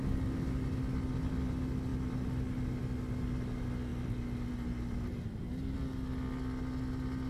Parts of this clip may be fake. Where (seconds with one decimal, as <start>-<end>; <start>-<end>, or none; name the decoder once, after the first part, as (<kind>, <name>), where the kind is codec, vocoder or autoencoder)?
none